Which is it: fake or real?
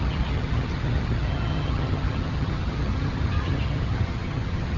fake